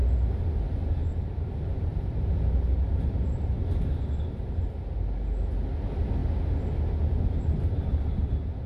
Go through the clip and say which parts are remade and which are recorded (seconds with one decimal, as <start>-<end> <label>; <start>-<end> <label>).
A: 0.0-8.7 recorded